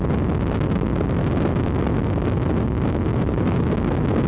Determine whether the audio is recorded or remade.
recorded